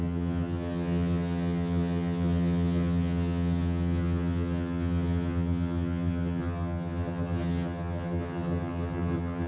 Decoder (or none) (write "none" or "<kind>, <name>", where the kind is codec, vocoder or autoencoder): vocoder, HiFi-GAN